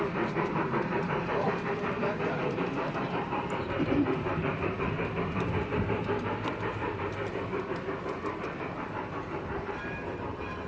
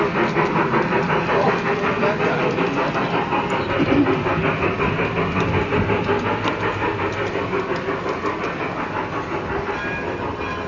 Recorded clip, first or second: second